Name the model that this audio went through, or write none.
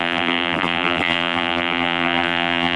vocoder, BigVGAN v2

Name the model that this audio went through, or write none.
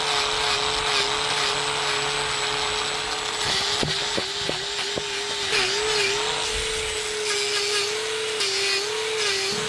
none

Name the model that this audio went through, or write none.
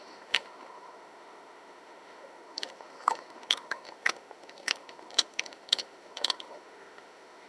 autoencoder, DAC-VAE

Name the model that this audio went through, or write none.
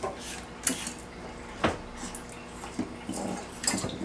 none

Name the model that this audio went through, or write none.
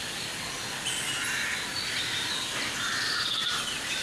none